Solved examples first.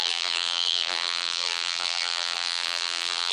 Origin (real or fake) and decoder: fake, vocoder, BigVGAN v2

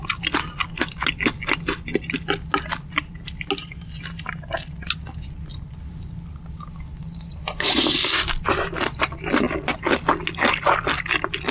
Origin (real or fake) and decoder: real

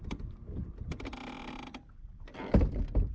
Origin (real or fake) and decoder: real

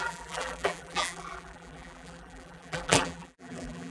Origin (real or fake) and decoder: fake, vocoder, BigVGAN v2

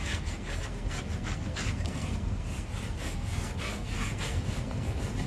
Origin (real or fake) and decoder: fake, codec, SNAC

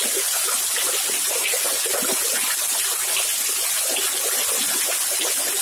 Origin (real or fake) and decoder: real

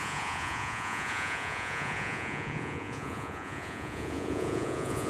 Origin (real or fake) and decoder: fake, vocoder, Vocos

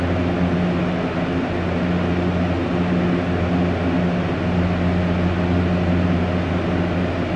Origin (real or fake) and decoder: real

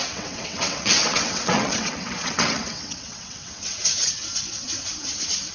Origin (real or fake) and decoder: fake, vocoder, WaveNeXt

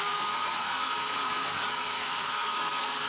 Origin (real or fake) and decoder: fake, codec, SNAC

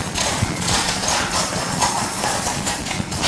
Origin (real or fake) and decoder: fake, vocoder, Vocos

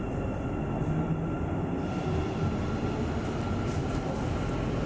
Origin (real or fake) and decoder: real